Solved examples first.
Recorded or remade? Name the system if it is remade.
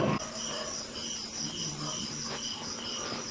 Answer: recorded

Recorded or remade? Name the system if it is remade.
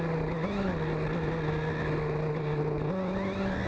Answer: recorded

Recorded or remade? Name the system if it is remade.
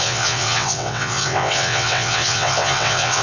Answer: remade, vocoder, WaveNeXt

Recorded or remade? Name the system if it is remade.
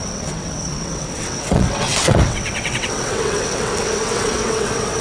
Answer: remade, vocoder, WaveNeXt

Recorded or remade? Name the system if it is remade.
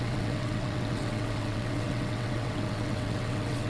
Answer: remade, vocoder, WaveNeXt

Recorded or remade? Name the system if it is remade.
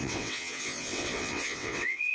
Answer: remade, vocoder, WaveNeXt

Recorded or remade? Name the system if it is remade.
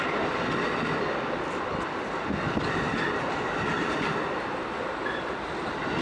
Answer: recorded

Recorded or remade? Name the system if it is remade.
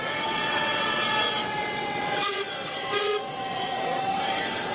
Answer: remade, vocoder, WaveNeXt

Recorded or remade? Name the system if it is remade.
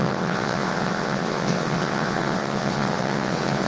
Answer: remade, vocoder, WaveNeXt